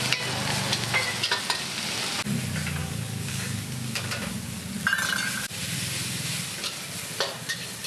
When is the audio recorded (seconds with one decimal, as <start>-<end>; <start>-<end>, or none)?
0.0-2.8; 4.5-7.9